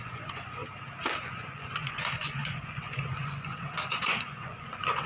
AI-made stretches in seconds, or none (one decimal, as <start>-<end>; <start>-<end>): 0.0-0.6; 1.2-5.1